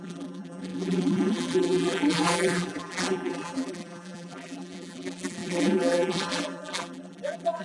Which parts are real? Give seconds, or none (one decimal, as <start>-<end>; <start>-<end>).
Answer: none